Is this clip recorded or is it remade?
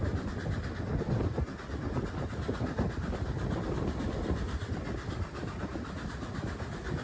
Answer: recorded